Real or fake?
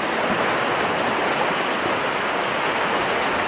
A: fake